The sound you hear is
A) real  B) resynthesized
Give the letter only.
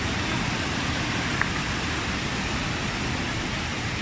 A